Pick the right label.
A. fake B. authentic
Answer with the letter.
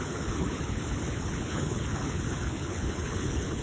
A